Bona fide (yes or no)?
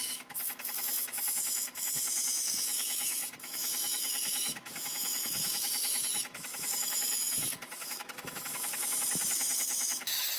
no